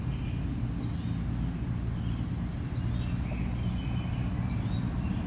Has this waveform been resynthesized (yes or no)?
no